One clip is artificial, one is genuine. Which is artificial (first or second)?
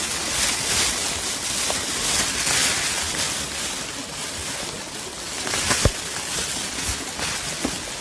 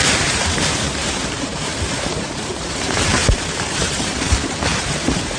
second